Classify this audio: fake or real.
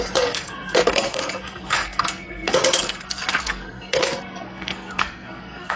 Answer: fake